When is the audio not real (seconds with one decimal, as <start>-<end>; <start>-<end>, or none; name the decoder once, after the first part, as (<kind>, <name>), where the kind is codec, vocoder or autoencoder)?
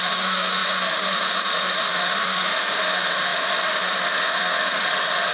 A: 0.0-5.3 (autoencoder, DAC-VAE)